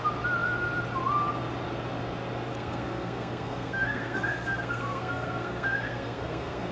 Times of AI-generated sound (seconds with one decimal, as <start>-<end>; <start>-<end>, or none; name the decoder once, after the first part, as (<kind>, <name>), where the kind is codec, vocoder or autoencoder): 2.5-6.7 (codec, SNAC)